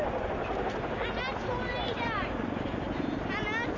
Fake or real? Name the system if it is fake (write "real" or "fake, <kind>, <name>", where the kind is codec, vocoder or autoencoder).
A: real